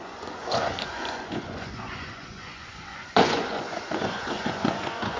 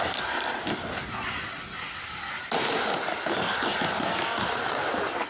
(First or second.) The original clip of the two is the second